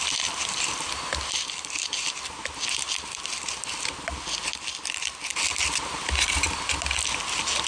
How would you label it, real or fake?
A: real